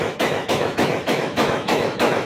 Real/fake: fake